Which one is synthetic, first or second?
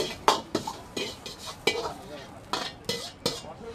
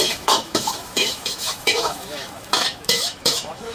second